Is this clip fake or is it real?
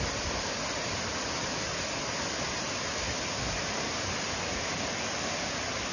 real